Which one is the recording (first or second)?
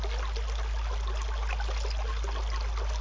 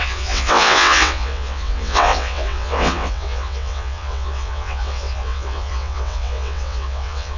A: first